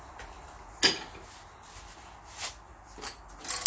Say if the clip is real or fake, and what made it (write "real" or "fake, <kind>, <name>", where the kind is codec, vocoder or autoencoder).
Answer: real